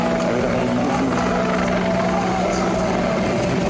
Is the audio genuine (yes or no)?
yes